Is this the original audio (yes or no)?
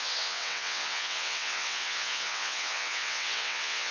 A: no